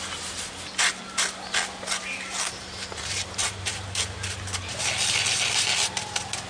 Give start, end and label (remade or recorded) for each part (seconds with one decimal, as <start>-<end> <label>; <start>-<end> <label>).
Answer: 0.0-6.5 recorded